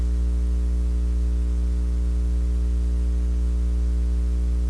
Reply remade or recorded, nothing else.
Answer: recorded